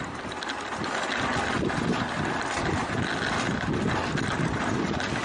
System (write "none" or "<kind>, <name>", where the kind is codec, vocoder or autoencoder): none